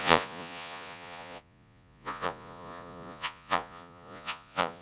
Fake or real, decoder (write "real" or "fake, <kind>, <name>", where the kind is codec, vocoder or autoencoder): fake, vocoder, Vocos